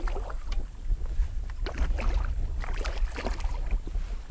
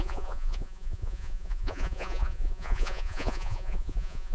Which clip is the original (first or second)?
first